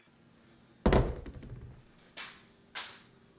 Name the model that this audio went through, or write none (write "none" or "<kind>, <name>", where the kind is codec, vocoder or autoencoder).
none